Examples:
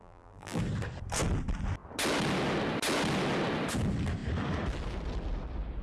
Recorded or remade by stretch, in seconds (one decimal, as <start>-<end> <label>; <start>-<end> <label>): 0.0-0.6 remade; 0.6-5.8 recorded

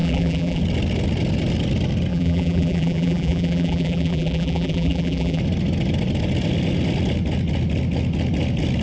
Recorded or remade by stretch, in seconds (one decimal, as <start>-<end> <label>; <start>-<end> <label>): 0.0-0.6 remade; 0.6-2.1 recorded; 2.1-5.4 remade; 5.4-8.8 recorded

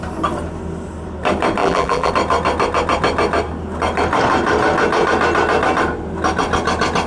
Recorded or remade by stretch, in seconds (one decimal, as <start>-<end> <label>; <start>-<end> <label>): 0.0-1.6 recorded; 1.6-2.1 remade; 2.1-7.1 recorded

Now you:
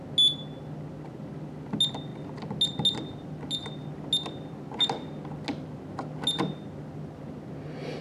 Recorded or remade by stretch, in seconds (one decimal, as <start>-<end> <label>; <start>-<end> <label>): 0.0-8.0 recorded